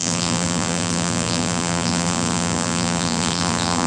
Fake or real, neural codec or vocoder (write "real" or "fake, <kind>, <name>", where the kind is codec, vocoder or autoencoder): fake, vocoder, BigVGAN v2